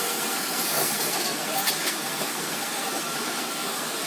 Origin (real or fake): fake